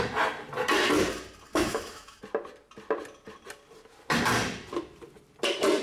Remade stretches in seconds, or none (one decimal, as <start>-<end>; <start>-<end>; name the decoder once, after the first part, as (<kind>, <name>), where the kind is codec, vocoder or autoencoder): 1.5-2.2 (autoencoder, DAC-VAE)